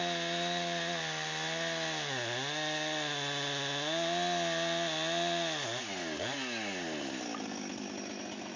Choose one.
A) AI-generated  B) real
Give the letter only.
B